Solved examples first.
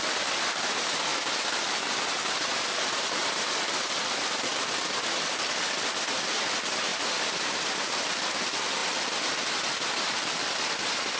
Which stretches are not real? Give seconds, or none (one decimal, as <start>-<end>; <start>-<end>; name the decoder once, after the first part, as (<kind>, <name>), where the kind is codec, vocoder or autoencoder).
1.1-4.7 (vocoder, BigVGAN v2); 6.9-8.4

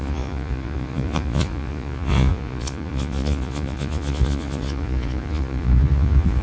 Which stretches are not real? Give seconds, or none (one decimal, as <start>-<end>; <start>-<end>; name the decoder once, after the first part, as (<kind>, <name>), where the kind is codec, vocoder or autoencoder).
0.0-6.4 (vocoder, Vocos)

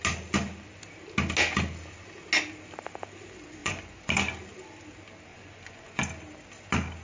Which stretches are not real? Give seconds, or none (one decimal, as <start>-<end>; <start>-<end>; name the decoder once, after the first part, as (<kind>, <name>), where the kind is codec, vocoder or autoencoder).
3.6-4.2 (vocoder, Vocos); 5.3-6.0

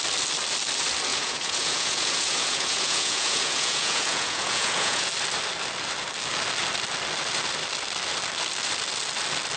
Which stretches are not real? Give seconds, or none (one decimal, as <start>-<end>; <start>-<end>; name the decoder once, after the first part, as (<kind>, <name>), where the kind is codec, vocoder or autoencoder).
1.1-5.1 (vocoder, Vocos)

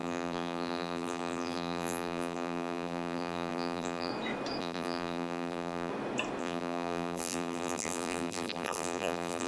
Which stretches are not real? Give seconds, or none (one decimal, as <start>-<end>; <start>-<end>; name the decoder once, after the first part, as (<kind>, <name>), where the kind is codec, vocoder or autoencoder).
0.0-4.1 (vocoder, BigVGAN v2); 4.6-5.9; 6.4-9.5

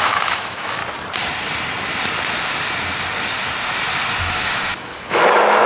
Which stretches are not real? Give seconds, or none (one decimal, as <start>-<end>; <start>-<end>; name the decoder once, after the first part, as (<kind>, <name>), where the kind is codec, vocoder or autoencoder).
0.0-0.8 (autoencoder, DAC-VAE); 4.2-5.7

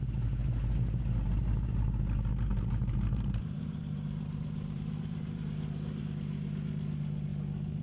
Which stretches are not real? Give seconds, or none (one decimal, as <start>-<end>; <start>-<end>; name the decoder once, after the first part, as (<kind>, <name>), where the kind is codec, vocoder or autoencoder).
1.4-2.0 (vocoder, BigVGAN v2); 2.5-6.0

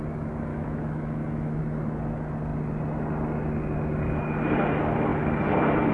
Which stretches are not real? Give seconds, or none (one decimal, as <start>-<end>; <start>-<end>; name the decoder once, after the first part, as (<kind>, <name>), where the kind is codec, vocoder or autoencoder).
0.5-1.6 (autoencoder, DAC-VAE)